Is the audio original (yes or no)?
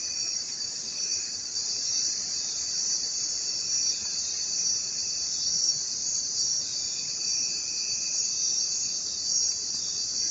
no